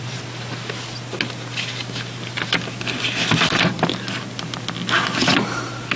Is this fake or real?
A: real